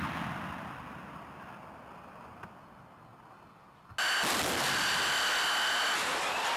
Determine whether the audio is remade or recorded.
recorded